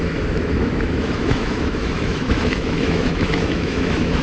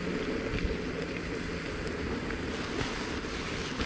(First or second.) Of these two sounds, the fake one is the first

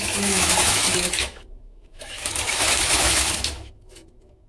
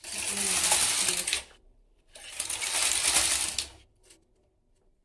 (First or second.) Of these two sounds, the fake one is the first